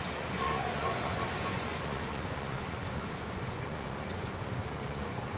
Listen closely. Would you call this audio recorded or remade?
remade